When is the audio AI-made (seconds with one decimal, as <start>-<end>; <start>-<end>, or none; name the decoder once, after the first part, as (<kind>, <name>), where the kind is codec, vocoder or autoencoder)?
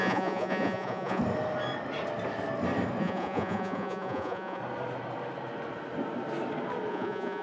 0.0-1.2 (vocoder, Vocos); 3.0-4.6; 6.9-7.4